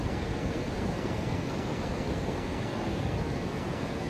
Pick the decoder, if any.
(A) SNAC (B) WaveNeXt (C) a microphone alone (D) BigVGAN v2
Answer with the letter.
A